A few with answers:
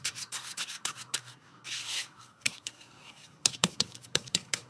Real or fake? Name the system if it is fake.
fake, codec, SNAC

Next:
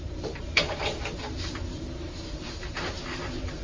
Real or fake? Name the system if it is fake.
fake, vocoder, BigVGAN v2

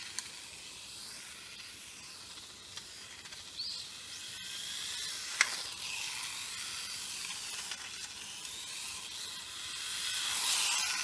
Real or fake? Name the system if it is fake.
real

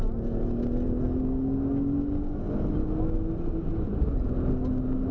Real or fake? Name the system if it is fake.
real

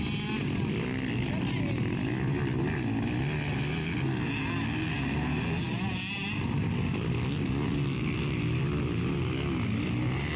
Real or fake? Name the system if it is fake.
real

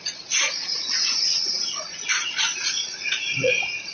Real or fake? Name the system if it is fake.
fake, vocoder, Vocos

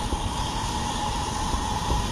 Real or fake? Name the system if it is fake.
real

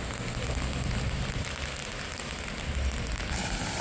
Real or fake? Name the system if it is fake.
real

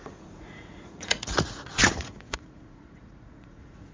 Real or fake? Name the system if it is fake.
fake, vocoder, Vocos